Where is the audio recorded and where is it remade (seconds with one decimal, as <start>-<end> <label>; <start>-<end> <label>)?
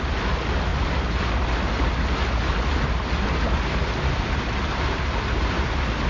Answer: 0.0-6.1 recorded